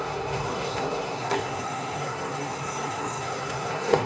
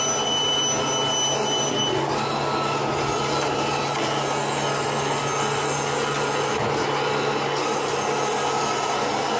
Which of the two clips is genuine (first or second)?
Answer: second